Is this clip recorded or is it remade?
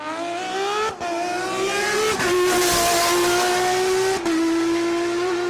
recorded